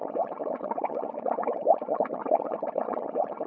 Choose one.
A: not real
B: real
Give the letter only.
A